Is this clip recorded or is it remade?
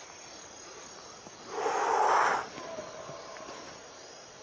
recorded